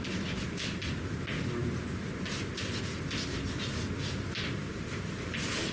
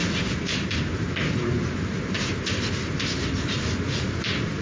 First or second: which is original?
first